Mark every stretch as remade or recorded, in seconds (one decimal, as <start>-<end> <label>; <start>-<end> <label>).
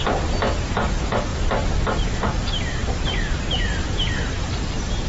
0.0-1.3 recorded; 1.3-4.4 remade; 4.4-5.1 recorded